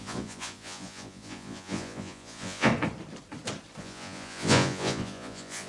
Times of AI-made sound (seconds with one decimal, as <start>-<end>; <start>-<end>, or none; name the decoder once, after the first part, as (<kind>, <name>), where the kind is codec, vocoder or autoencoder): 0.0-2.7 (vocoder, Vocos); 3.8-5.7